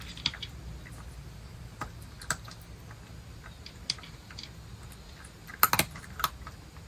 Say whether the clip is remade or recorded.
recorded